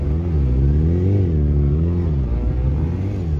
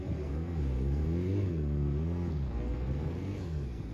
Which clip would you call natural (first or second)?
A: first